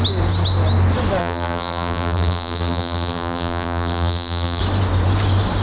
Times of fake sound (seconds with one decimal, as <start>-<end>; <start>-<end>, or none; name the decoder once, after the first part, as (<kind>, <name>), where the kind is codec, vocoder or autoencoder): 1.2-4.6 (vocoder, BigVGAN v2)